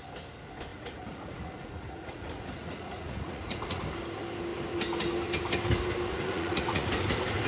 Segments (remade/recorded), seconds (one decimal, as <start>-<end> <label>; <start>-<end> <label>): 0.0-0.7 recorded; 0.7-3.8 remade; 3.8-6.1 recorded; 6.1-6.9 remade; 6.9-7.5 recorded